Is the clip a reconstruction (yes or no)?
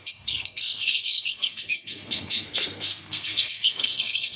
yes